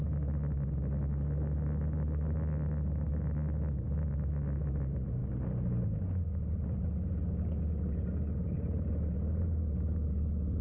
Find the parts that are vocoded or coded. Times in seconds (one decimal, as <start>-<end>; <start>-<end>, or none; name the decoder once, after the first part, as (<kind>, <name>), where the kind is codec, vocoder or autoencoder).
none